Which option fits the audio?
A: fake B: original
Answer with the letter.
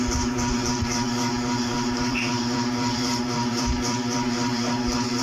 A